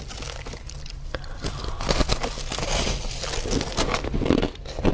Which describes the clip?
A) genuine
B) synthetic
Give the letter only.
A